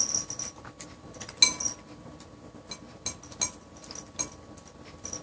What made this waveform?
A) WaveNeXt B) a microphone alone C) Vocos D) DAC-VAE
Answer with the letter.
B